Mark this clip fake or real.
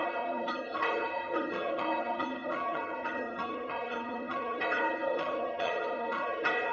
fake